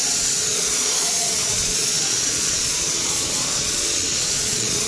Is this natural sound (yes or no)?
no